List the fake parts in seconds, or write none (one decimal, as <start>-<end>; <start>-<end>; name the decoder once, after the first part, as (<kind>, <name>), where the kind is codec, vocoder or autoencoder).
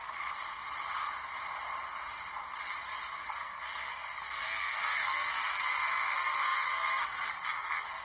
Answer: 3.3-8.0 (codec, SNAC)